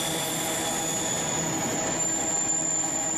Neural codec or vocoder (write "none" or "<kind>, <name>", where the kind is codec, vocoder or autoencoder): none